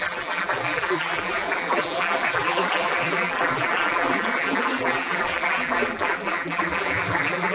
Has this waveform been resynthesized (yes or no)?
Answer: yes